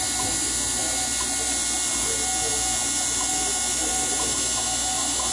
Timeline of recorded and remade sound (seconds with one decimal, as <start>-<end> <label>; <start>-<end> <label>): 0.0-5.3 recorded